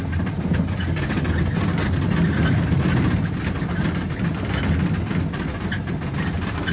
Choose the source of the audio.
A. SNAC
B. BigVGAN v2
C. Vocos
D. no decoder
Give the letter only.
D